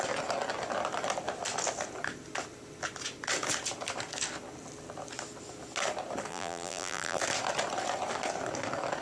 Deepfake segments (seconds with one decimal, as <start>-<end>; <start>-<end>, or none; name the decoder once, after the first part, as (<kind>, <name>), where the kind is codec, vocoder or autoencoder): 6.3-7.2 (vocoder, BigVGAN v2)